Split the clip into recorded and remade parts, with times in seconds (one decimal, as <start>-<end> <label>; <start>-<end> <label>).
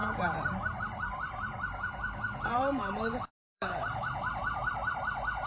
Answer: 0.0-5.5 remade